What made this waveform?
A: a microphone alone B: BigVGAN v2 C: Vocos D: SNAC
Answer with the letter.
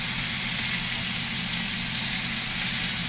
A